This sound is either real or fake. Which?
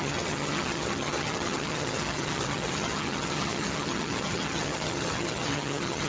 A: fake